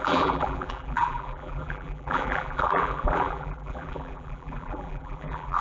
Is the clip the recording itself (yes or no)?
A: no